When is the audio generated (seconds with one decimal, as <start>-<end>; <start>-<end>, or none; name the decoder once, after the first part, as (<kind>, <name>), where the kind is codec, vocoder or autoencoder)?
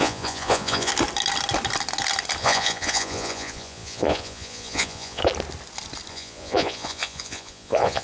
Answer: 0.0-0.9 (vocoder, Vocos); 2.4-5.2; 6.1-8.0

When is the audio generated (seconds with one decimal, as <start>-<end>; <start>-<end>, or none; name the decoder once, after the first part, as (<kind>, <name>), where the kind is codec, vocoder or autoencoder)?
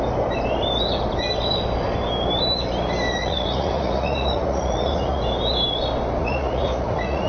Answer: 3.2-5.2 (vocoder, Vocos); 6.2-7.3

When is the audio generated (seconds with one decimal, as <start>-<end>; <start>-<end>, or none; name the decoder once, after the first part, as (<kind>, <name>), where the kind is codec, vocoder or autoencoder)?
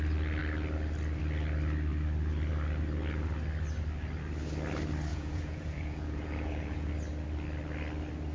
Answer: 5.1-6.9 (vocoder, Vocos)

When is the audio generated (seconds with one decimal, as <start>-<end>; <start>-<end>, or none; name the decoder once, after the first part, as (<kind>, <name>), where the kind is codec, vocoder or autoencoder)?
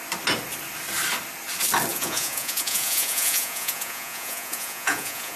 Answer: 1.9-5.4 (vocoder, Vocos)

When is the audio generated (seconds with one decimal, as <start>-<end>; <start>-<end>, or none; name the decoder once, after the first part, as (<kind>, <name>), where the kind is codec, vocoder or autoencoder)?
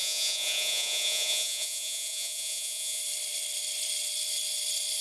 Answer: 0.0-3.0 (vocoder, Vocos)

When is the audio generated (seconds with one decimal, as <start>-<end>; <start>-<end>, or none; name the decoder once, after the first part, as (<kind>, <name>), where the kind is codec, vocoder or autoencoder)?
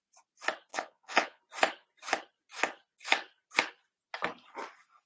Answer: 0.7-1.4 (vocoder, Vocos)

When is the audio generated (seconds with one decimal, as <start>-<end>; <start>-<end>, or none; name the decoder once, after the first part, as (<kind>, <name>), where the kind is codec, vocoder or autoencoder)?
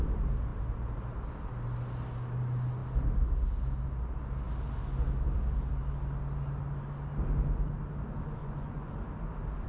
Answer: 8.4-8.9 (vocoder, Vocos)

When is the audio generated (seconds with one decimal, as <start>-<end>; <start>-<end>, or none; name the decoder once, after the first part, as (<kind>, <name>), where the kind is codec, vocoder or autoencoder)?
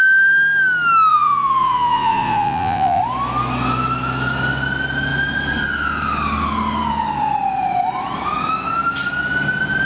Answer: 1.1-3.0 (vocoder, Vocos)